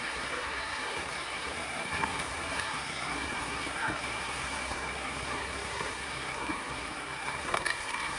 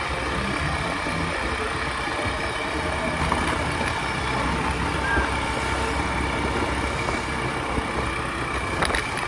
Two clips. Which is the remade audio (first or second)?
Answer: first